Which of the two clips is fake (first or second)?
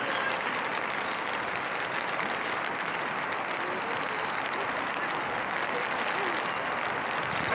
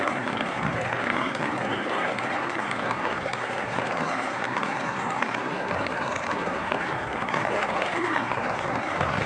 second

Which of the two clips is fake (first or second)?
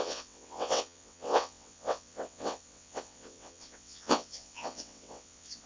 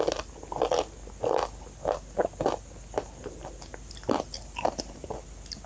first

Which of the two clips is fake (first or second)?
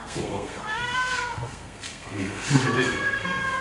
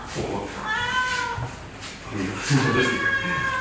first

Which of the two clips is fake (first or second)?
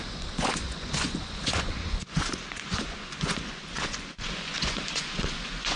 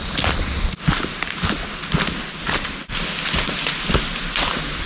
first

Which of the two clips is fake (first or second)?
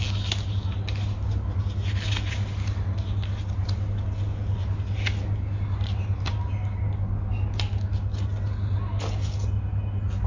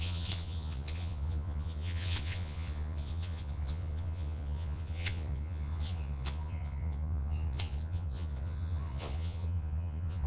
second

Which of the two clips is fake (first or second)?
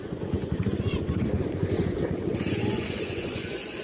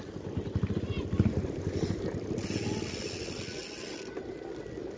first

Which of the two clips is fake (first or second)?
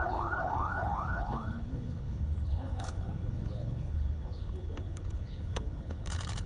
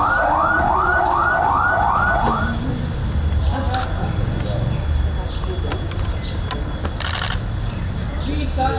first